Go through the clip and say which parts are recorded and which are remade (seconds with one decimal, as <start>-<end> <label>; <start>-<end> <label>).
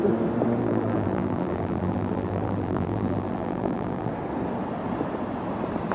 0.0-0.6 recorded; 0.6-4.1 remade; 4.1-5.9 recorded